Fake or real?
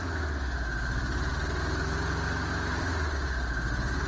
real